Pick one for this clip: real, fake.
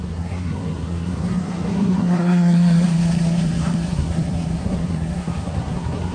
fake